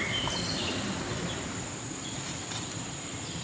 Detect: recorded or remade recorded